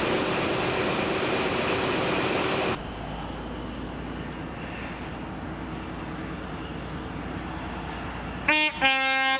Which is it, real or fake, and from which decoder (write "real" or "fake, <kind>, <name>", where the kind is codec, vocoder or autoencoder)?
real